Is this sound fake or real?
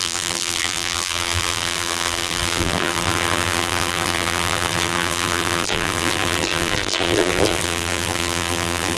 fake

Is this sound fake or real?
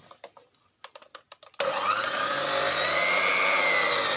real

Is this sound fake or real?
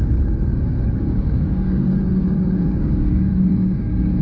fake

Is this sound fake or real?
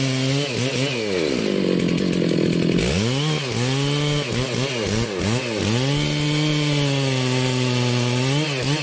real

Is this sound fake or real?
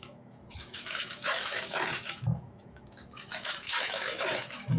fake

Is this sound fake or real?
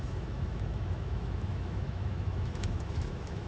fake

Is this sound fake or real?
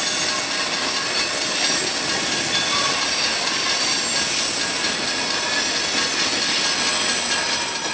real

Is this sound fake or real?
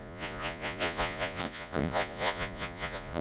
fake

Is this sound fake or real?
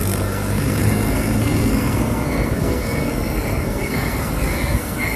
fake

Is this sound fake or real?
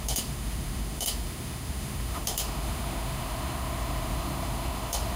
fake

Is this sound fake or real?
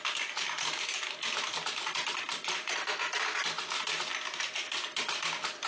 real